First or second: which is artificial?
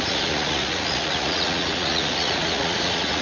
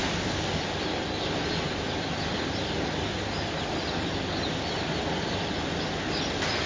first